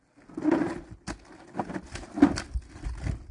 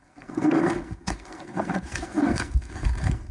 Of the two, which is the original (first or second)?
first